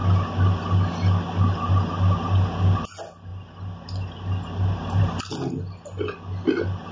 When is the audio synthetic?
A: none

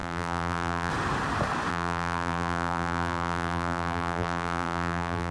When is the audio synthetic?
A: 0.0-0.9 (vocoder, BigVGAN v2); 1.7-5.3

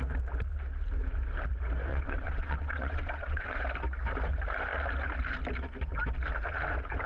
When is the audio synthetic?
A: 1.9-3.6 (vocoder, WaveNeXt)

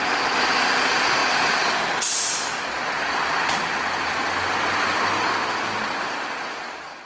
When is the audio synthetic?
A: none

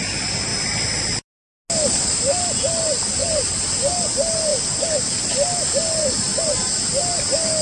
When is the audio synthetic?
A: 3.2-3.9 (vocoder, BigVGAN v2)